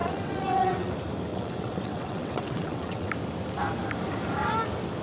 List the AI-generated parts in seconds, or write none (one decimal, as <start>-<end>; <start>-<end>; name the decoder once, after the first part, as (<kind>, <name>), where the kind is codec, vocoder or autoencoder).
0.0-0.9 (vocoder, WaveNeXt); 1.3-3.1